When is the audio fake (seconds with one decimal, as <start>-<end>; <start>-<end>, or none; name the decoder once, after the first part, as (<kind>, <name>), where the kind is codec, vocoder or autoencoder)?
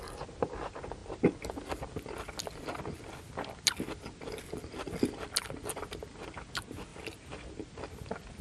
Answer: 6.9-7.5 (vocoder, BigVGAN v2)